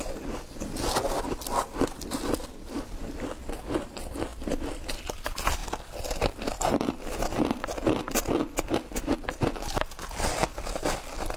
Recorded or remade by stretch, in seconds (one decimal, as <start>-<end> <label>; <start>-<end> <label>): 0.0-11.4 recorded